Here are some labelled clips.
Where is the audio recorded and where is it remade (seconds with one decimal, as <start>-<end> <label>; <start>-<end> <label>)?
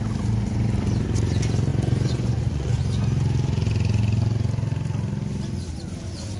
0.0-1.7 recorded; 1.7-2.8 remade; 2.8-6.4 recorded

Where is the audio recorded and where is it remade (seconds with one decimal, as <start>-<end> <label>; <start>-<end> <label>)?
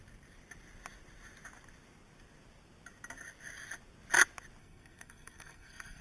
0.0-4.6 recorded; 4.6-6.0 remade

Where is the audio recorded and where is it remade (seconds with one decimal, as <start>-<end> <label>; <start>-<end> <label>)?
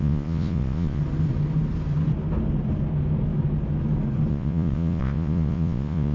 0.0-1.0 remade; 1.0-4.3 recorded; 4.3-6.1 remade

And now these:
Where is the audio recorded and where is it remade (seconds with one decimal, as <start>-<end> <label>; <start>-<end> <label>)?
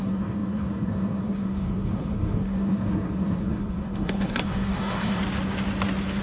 0.0-5.2 remade; 5.2-6.2 recorded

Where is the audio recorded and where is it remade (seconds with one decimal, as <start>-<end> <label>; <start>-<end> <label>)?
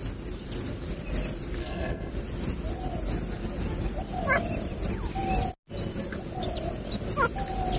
0.0-1.6 recorded; 1.6-2.1 remade; 2.1-7.8 recorded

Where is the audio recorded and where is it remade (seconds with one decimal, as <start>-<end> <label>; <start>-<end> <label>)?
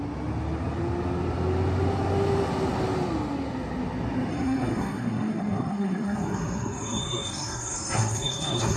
0.0-4.3 recorded; 4.3-8.8 remade